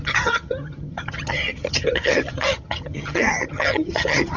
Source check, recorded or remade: remade